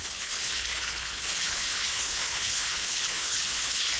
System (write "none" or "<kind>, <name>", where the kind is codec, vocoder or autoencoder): codec, HILCodec